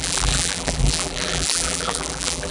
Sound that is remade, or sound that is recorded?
remade